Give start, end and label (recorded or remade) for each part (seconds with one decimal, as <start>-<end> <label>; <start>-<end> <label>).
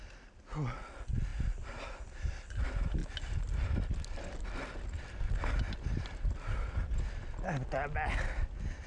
0.0-8.9 recorded